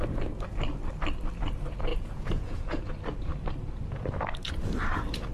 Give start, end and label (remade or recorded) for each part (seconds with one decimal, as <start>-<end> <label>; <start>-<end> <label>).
0.0-1.9 recorded; 1.9-2.8 remade; 2.8-5.3 recorded